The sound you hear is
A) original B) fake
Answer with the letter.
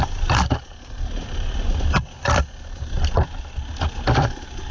A